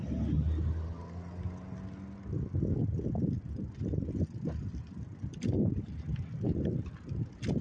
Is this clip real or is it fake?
real